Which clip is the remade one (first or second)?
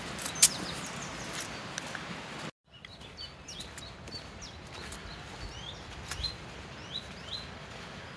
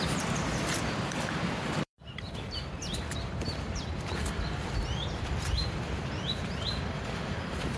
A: second